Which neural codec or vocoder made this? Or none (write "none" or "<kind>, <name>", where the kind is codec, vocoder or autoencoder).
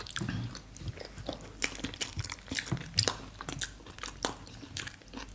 none